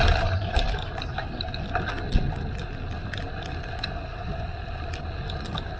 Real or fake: real